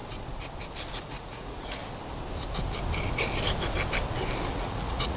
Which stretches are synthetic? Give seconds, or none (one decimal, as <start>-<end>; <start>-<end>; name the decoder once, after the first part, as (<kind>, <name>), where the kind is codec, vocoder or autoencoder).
1.0-1.8 (vocoder, Vocos); 4.5-5.2